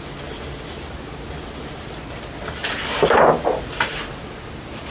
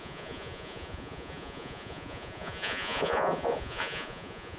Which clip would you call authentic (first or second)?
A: first